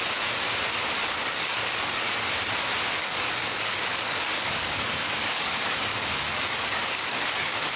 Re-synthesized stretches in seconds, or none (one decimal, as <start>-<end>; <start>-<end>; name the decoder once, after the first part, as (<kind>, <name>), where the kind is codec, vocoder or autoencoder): 1.0-2.2 (codec, DAC); 3.0-7.8